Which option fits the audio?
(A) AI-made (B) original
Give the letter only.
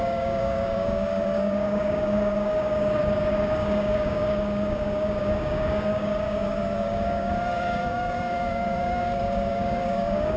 A